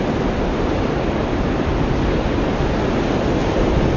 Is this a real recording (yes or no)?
yes